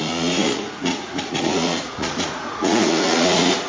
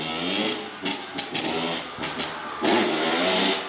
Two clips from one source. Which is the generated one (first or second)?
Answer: first